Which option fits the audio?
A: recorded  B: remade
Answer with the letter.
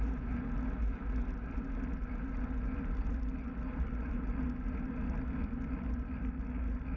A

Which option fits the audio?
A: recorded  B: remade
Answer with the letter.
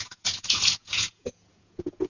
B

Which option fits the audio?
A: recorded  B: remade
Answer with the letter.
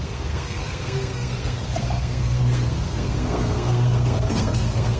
B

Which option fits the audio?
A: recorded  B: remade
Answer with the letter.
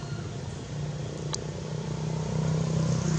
A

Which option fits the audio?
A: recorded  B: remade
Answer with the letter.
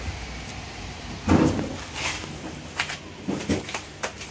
A